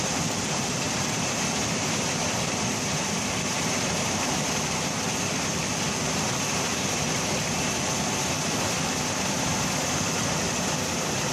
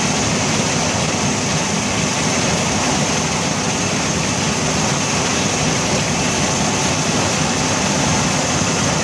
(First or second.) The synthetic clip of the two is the first